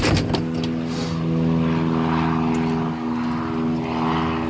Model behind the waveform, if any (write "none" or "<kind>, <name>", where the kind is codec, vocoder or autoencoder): none